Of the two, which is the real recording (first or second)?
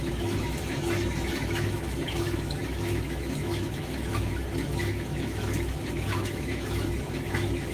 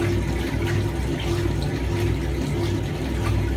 second